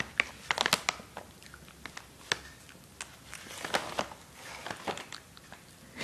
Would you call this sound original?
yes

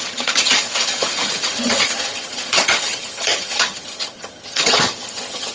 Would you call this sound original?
no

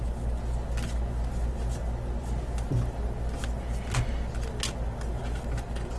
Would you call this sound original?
yes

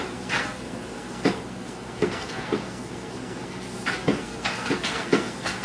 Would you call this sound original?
no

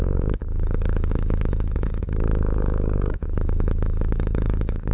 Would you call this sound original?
no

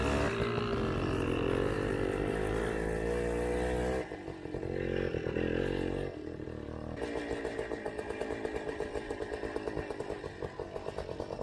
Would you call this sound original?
yes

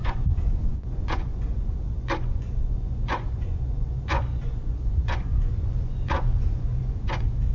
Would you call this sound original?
no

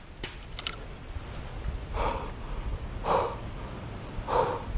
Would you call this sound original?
yes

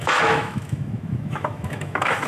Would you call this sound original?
no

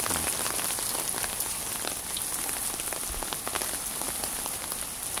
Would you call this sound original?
yes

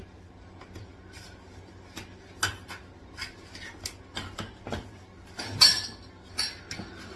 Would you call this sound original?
yes